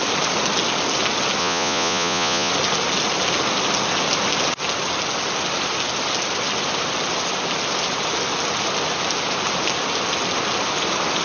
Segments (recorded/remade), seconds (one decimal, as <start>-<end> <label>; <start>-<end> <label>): 0.0-1.4 recorded; 1.4-2.5 remade; 2.5-11.2 recorded